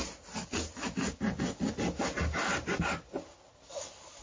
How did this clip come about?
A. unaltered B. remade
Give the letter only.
A